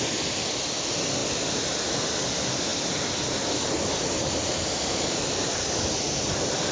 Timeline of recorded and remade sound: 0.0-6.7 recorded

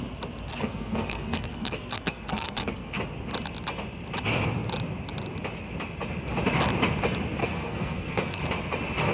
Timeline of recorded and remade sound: 0.0-0.5 recorded; 0.5-3.0 remade; 3.0-7.4 recorded; 7.4-8.4 remade; 8.4-9.1 recorded

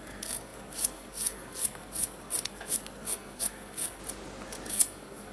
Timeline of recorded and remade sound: 0.0-4.0 remade; 4.0-4.7 recorded; 4.7-5.3 remade

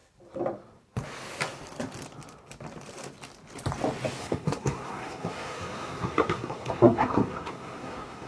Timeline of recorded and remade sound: 0.0-4.2 recorded; 4.2-8.3 remade

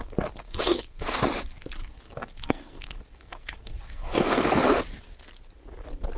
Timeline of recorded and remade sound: 0.0-0.4 recorded; 0.4-1.2 remade; 1.2-1.8 recorded; 1.8-4.8 remade; 4.8-6.2 recorded

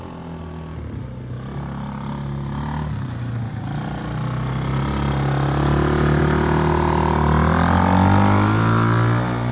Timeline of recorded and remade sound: 0.0-9.5 recorded

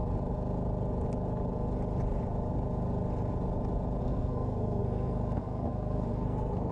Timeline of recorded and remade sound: 0.0-4.0 recorded; 4.0-6.7 remade

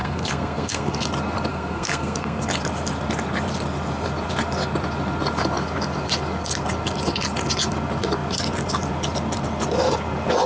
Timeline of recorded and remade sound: 0.0-1.0 remade; 1.0-1.5 recorded; 1.5-2.4 remade; 2.4-10.5 recorded